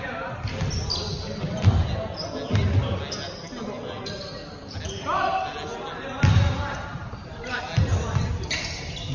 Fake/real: real